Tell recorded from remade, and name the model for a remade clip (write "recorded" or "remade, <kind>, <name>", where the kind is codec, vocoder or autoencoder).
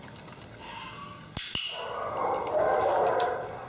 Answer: recorded